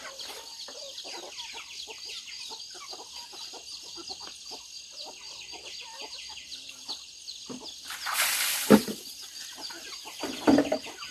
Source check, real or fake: real